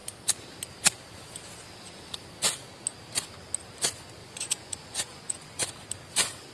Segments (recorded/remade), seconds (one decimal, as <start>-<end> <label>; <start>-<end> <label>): 0.0-4.2 recorded; 4.2-5.7 remade; 5.7-6.5 recorded